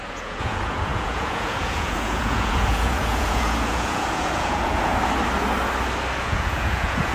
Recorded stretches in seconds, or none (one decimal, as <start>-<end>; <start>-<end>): 4.9-6.2